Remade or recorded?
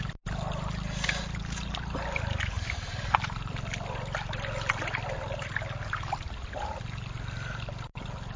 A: recorded